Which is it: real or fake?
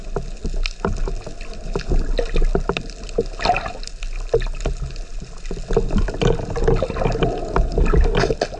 real